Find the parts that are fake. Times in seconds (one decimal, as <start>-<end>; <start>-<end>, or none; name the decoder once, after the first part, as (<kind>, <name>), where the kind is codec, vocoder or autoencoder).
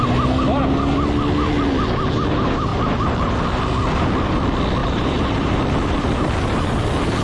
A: 4.8-5.6 (vocoder, BigVGAN v2)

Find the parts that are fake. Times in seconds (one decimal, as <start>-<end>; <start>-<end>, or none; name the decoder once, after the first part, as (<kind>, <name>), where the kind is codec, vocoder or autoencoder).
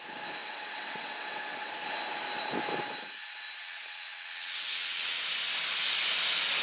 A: 0.4-1.7 (vocoder, WaveNeXt); 3.6-5.2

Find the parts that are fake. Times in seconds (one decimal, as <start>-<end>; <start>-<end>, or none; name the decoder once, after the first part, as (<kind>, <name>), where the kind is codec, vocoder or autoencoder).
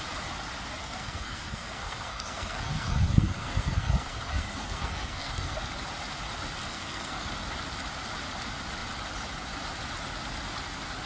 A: 0.8-5.6 (codec, SNAC); 6.7-7.3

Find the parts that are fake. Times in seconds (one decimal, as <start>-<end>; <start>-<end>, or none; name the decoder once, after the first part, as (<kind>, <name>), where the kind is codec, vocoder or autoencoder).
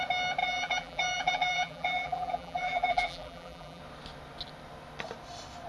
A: 0.4-3.8 (vocoder, BigVGAN v2)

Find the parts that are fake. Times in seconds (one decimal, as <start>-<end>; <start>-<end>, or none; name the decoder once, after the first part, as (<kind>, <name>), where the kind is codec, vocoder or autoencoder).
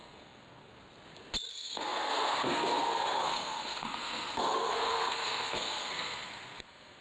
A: 0.0-0.8 (codec, SNAC); 1.5-7.0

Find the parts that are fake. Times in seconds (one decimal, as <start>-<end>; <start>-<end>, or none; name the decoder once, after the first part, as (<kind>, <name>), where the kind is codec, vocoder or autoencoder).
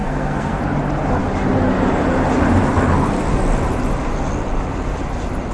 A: 0.0-0.6 (codec, SNAC)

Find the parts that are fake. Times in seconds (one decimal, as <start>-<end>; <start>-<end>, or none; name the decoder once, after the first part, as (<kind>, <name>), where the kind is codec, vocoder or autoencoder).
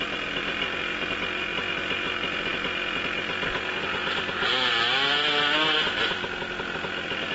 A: none